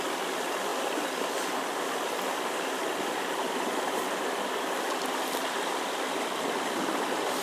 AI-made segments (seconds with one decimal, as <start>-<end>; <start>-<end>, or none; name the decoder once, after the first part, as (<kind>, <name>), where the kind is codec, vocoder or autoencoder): none